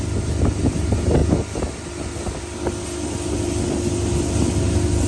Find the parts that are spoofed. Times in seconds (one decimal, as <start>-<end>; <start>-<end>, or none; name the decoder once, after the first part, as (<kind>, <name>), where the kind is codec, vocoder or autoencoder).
none